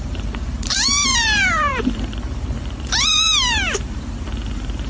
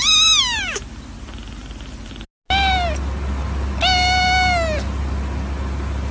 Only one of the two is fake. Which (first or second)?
first